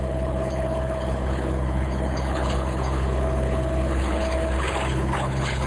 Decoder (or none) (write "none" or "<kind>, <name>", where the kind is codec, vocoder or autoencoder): codec, HILCodec